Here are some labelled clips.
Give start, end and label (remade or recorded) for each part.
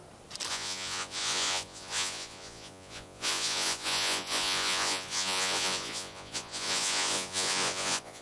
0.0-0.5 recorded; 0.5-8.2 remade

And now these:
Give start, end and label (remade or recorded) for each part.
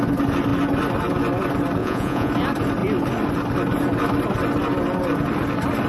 0.0-1.8 recorded; 1.8-2.3 remade; 2.3-5.9 recorded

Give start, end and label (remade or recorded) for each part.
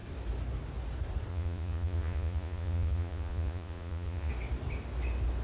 0.0-1.3 recorded; 1.3-4.3 remade; 4.3-5.4 recorded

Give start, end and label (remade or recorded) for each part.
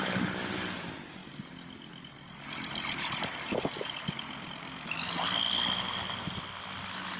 0.0-7.2 recorded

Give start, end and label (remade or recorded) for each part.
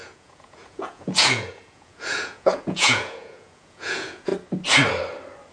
0.0-4.3 remade; 4.3-5.5 recorded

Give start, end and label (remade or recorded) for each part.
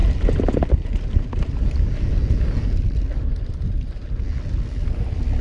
0.0-5.4 recorded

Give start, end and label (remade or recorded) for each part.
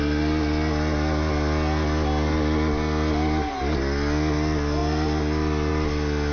0.0-6.3 recorded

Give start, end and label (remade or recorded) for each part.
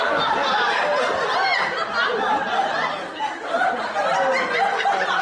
0.0-4.4 recorded; 4.4-5.2 remade